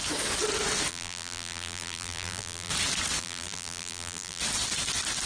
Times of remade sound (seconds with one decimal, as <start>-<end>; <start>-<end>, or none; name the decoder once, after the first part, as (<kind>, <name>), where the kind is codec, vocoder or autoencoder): 0.9-2.7 (vocoder, BigVGAN v2); 3.2-4.4